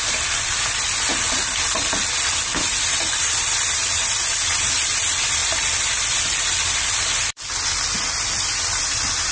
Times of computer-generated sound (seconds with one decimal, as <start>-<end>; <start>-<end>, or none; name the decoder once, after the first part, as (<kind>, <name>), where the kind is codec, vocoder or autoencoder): 0.0-1.1 (vocoder, BigVGAN v2); 2.2-9.3